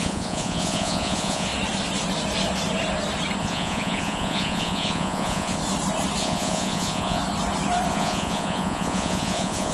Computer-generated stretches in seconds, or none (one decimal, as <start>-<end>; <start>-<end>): 0.0-1.5; 3.4-5.6; 6.2-7.2; 7.9-9.7